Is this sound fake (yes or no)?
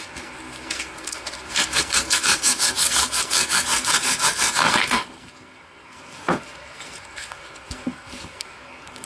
yes